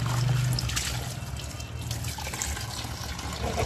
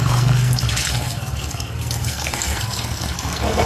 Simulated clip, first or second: second